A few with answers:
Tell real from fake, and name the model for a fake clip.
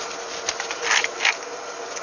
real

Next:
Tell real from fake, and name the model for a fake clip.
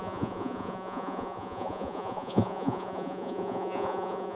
fake, vocoder, Vocos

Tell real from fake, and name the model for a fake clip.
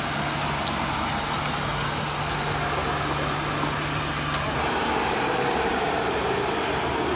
real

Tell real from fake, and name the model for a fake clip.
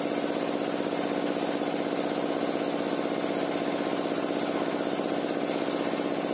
real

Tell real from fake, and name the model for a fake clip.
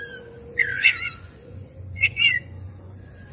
fake, vocoder, Vocos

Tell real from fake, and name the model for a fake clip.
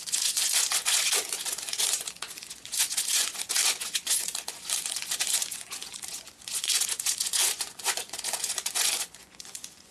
fake, vocoder, Vocos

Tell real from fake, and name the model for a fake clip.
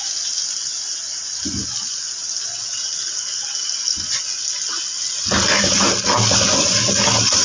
real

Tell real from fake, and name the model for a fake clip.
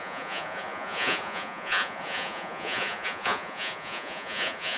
fake, vocoder, Vocos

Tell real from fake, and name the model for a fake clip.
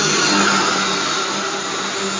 real